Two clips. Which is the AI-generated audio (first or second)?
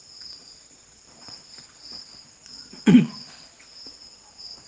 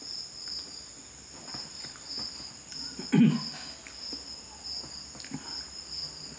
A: first